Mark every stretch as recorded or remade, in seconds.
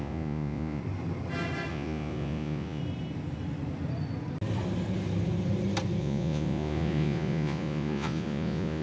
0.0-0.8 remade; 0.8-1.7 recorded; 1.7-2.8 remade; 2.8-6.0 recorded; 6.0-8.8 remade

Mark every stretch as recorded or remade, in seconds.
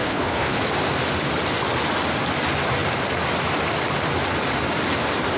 0.0-0.6 remade; 0.6-5.4 recorded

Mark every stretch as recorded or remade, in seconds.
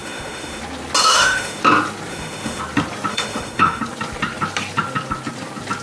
0.0-0.6 remade; 0.6-1.0 recorded; 1.0-1.6 remade; 1.6-2.1 recorded; 2.1-2.6 remade; 2.6-3.1 recorded; 3.1-3.8 remade; 3.8-5.8 recorded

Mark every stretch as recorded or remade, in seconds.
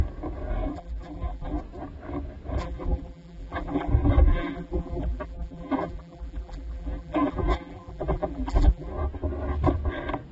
0.0-0.7 recorded; 0.7-1.6 remade; 1.6-2.6 recorded; 2.6-3.9 remade; 3.9-4.3 recorded; 4.3-8.9 remade; 8.9-10.3 recorded